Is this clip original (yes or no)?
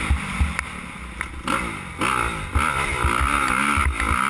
yes